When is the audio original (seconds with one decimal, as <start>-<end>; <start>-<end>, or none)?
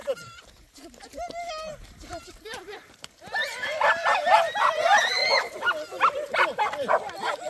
5.2-7.5